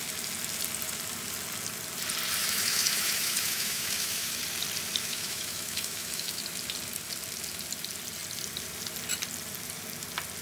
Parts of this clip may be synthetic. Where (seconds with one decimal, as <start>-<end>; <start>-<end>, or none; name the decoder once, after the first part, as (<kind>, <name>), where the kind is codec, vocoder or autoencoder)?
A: 2.4-4.4 (autoencoder, DAC-VAE); 5.0-6.4